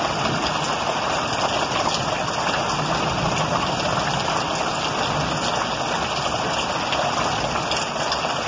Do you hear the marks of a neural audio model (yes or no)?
no